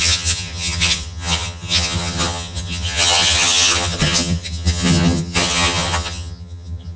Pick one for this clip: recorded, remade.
remade